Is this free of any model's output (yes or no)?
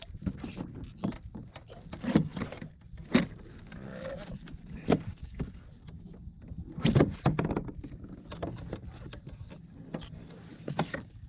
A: yes